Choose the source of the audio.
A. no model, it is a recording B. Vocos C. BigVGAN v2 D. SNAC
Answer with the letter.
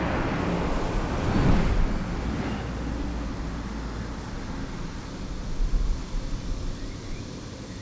A